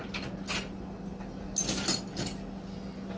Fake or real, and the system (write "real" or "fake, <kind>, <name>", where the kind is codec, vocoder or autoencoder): real